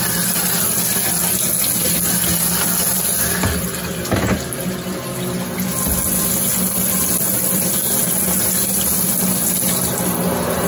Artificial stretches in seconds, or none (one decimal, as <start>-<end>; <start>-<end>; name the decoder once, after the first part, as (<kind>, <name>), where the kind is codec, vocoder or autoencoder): none